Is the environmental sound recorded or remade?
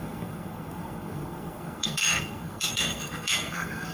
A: remade